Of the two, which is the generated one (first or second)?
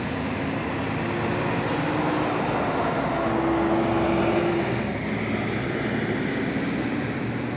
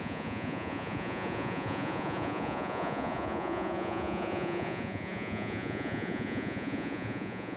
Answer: second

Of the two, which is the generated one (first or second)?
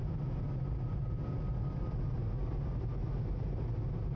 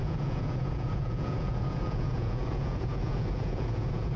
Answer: second